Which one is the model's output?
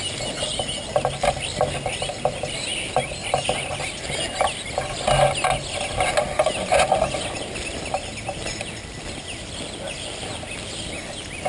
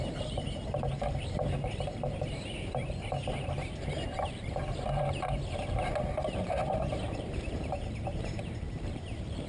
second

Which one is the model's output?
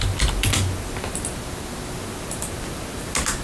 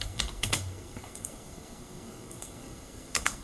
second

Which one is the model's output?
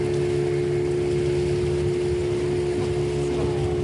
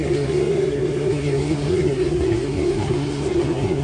second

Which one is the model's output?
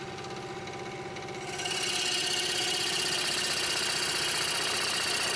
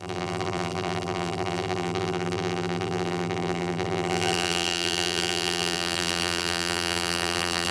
second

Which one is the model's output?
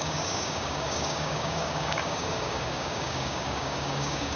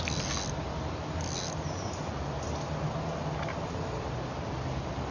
first